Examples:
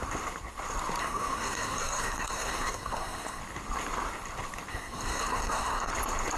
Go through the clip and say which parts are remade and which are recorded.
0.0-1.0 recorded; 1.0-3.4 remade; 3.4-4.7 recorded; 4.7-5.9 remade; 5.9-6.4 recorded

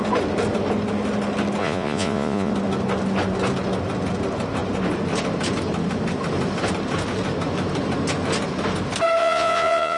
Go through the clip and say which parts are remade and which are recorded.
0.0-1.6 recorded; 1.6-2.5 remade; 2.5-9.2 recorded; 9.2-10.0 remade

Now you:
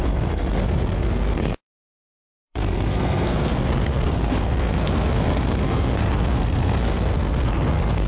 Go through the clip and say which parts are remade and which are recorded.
0.0-8.1 remade

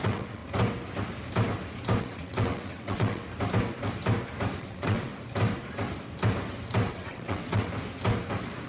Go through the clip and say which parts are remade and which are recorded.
0.0-0.4 remade; 0.4-2.0 recorded; 2.0-3.2 remade; 3.2-4.6 recorded; 4.6-5.1 remade; 5.1-6.9 recorded; 6.9-7.7 remade; 7.7-8.7 recorded

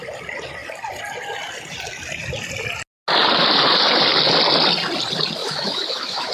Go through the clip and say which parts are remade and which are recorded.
0.0-5.4 recorded; 5.4-6.3 remade